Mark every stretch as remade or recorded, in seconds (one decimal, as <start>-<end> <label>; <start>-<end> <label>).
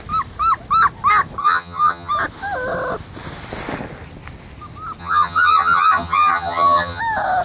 0.0-1.4 recorded; 1.4-2.1 remade; 2.1-5.0 recorded; 5.0-7.0 remade; 7.0-7.4 recorded